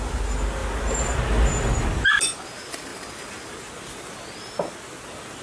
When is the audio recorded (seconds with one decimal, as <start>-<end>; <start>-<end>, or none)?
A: 0.0-5.4